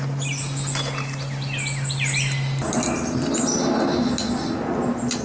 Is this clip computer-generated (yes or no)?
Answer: no